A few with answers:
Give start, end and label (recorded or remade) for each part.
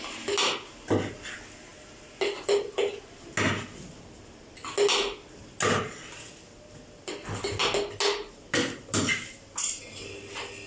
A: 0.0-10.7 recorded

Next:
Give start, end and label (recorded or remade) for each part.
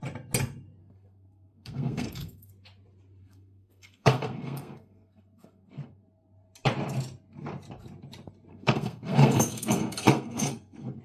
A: 0.0-0.8 recorded; 0.8-2.5 remade; 2.5-3.2 recorded; 3.2-6.0 remade; 6.0-8.5 recorded; 8.5-11.0 remade